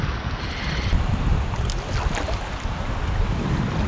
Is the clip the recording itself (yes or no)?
yes